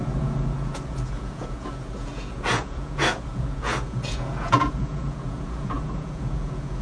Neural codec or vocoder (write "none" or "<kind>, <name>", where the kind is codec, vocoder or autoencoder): vocoder, Vocos